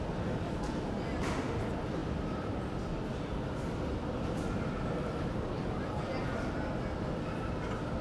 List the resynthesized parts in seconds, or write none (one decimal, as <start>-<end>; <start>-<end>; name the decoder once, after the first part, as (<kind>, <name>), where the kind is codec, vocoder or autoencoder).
2.0-2.6 (vocoder, BigVGAN v2)